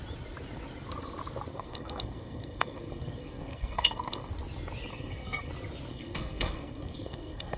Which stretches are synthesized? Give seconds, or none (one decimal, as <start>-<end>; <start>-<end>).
1.5-4.3; 4.9-5.5; 5.9-7.6